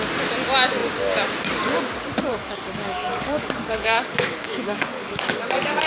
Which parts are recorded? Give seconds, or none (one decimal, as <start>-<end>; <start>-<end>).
0.0-2.3; 5.4-5.9